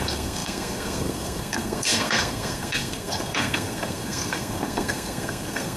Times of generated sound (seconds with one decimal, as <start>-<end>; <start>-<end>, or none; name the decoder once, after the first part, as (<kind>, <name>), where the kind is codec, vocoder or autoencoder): 0.0-5.8 (codec, SNAC)